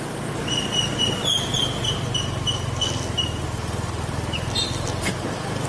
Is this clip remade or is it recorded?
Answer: recorded